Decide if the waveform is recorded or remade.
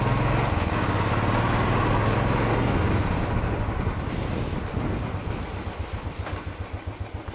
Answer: recorded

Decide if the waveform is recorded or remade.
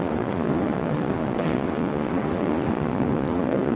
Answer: remade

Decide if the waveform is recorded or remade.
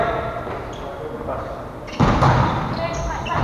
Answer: recorded